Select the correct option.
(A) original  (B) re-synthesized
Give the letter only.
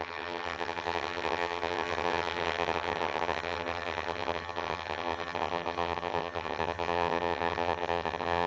B